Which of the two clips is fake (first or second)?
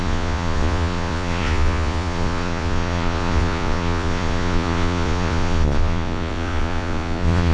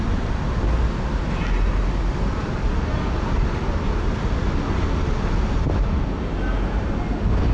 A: first